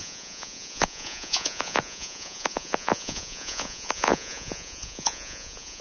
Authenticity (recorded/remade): remade